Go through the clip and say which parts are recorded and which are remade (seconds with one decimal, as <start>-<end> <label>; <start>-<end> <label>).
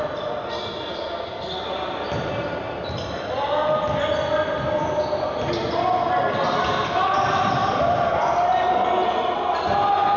0.0-10.2 recorded